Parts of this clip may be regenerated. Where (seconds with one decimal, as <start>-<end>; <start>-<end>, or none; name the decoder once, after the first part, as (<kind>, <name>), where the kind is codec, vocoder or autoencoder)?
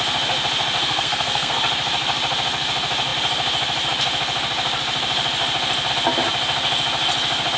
0.8-1.6 (codec, SNAC)